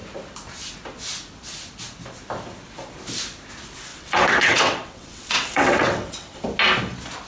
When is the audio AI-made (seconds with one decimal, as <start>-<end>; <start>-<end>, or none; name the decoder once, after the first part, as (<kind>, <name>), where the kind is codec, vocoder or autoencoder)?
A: 3.9-6.4 (vocoder, WaveNeXt)